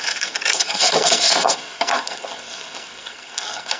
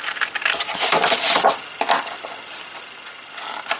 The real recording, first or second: second